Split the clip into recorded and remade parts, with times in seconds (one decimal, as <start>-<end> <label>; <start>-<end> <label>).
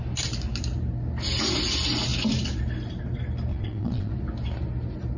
0.0-3.5 recorded; 3.5-4.1 remade; 4.1-5.2 recorded